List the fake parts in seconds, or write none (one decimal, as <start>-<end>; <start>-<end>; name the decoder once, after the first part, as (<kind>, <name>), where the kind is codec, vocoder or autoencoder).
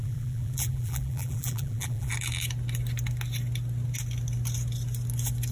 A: 0.0-2.1 (vocoder, BigVGAN v2)